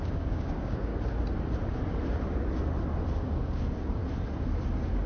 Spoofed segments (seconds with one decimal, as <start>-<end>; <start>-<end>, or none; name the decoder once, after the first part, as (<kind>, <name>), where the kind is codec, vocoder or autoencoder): 0.0-0.9 (codec, DAC); 3.2-4.0